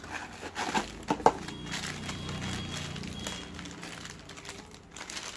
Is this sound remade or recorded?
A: recorded